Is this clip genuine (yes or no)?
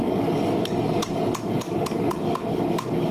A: no